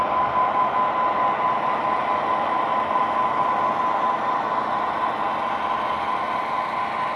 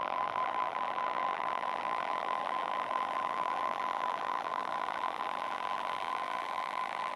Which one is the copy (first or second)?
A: second